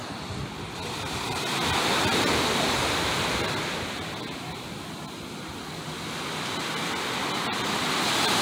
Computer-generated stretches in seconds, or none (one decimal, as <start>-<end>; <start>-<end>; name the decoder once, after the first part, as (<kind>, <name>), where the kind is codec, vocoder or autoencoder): none